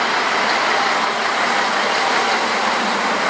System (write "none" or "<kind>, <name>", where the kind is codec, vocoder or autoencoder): none